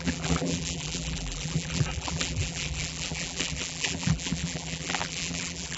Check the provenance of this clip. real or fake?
fake